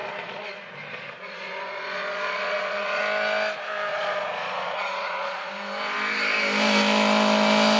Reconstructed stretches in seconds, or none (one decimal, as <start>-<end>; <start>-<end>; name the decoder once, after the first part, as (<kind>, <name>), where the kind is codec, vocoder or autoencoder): 0.0-3.0 (vocoder, Vocos); 3.9-5.5